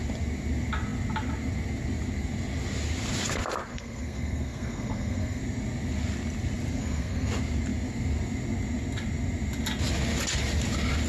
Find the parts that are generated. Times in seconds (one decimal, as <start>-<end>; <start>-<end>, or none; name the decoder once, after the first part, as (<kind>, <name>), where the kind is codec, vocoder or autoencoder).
3.7-5.4 (codec, SNAC); 6.8-7.3